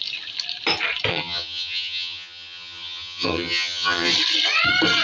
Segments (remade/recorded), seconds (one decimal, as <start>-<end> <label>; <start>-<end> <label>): 0.0-1.1 recorded; 1.1-4.1 remade; 4.1-5.0 recorded